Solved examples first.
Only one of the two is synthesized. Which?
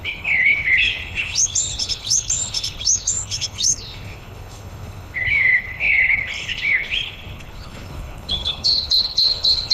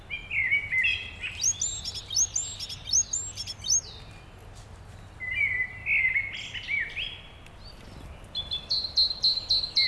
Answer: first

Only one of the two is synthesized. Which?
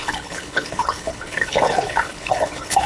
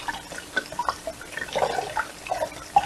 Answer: first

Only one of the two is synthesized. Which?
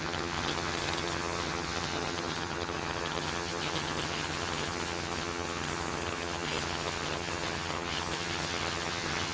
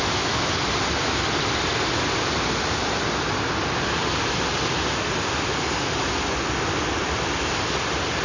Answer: first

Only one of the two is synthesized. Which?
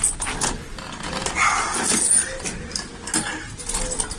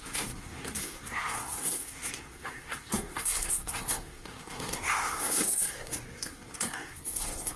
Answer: second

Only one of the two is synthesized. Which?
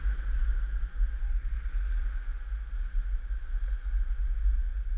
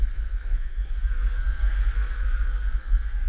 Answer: second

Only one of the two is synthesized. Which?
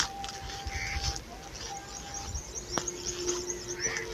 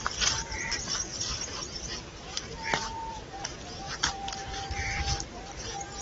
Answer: second